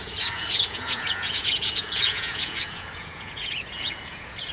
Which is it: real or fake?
fake